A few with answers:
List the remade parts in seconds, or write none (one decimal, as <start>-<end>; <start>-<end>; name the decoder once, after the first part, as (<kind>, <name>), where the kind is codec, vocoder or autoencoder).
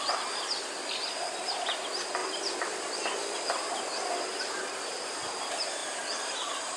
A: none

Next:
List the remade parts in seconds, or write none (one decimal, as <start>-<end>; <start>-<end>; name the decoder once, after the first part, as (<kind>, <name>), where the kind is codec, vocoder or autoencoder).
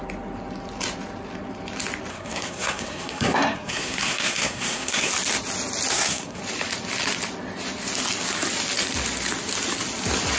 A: 2.1-5.1 (codec, SNAC); 5.9-6.4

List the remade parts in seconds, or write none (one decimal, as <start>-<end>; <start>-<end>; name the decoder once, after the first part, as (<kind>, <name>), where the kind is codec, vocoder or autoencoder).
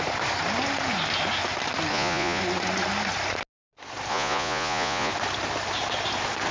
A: 1.9-2.4 (vocoder, Vocos); 4.1-5.1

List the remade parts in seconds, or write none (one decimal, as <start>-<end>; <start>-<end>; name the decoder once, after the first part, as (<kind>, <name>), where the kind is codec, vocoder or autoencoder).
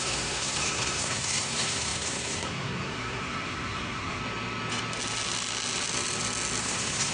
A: 0.0-4.2 (codec, SNAC); 6.6-7.1